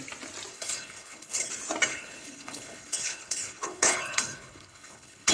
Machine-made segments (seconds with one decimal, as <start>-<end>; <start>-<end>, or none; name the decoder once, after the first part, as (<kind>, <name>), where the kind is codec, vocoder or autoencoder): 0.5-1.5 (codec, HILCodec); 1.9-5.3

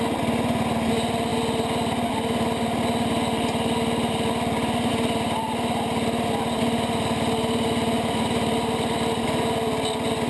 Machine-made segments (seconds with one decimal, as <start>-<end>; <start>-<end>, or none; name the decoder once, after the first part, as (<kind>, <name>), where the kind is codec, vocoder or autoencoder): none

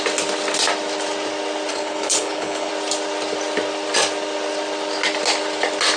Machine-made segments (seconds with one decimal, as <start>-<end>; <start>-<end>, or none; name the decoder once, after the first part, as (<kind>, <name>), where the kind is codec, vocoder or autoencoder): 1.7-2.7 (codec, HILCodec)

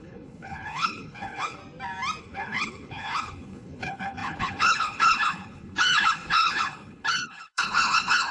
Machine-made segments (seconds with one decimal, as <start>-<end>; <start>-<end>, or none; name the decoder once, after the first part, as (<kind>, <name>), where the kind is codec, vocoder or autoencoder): 0.0-1.6 (codec, HILCodec); 2.2-8.3

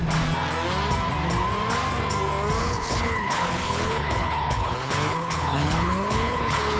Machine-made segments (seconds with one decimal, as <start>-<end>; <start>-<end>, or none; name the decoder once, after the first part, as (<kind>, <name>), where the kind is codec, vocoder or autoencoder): 2.6-6.8 (codec, HILCodec)

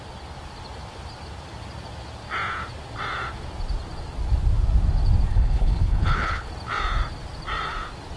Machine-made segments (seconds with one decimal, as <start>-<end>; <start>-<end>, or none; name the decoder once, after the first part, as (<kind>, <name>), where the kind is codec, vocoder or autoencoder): 5.3-6.5 (codec, HILCodec)

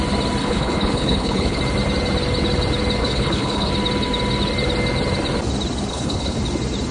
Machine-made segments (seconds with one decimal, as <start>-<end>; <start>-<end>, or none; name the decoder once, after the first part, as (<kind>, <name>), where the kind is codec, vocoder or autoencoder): 0.4-1.6 (codec, HILCodec); 3.0-3.7; 5.9-6.4

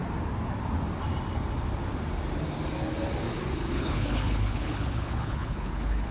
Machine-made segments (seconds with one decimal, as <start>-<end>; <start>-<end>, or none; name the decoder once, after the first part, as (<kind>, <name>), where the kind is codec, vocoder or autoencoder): 3.7-6.1 (codec, HILCodec)